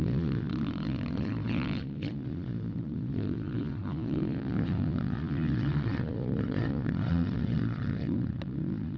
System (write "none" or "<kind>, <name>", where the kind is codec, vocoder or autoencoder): vocoder, Vocos